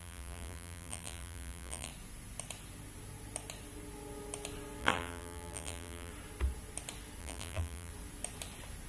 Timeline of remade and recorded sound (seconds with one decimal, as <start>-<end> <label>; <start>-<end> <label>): 0.0-1.9 remade; 1.9-4.8 recorded; 4.8-6.1 remade; 6.1-7.2 recorded; 7.2-7.9 remade; 7.9-8.9 recorded